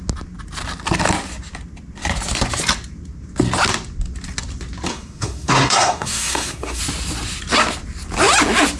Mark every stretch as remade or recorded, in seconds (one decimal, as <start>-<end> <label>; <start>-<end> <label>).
0.0-4.9 recorded; 4.9-6.8 remade; 6.8-8.8 recorded